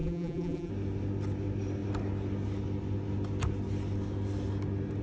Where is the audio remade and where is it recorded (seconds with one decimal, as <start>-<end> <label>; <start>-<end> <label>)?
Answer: 0.0-0.7 remade; 0.7-5.0 recorded

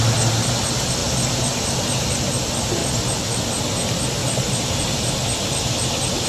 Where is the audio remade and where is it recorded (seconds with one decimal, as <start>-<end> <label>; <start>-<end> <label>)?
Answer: 0.0-1.0 recorded; 1.0-1.5 remade; 1.5-4.2 recorded; 4.2-4.8 remade; 4.8-6.3 recorded

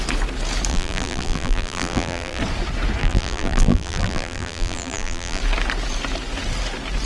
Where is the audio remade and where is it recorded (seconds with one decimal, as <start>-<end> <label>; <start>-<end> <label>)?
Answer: 0.0-0.7 recorded; 0.7-2.4 remade; 2.4-3.0 recorded; 3.0-5.4 remade; 5.4-7.0 recorded

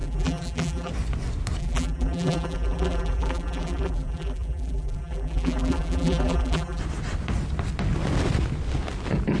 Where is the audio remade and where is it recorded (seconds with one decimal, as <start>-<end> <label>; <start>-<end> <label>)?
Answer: 0.0-0.9 remade; 0.9-1.6 recorded; 1.6-6.8 remade; 6.8-9.4 recorded